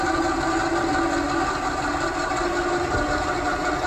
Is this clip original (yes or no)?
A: yes